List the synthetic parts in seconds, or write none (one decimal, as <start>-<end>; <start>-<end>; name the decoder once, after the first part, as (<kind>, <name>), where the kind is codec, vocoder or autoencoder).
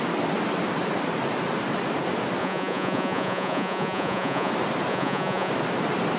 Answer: 2.4-4.5 (vocoder, Vocos); 4.9-5.5